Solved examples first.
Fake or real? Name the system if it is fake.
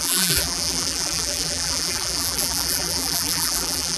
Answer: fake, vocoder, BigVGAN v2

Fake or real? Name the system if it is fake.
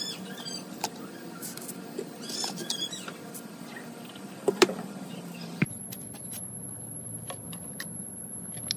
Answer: fake, vocoder, BigVGAN v2